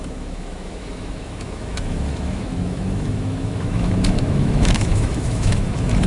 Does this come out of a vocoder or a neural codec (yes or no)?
yes